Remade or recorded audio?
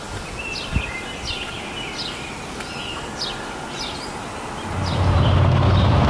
recorded